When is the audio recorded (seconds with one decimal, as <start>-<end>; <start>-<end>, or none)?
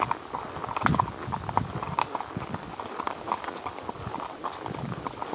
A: 0.0-5.3